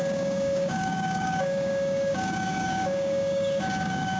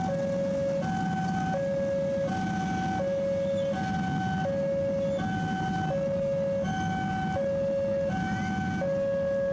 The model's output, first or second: first